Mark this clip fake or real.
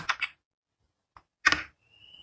real